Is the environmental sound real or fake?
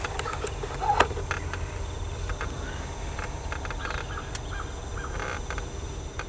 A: real